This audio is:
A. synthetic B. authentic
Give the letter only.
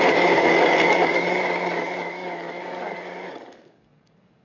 A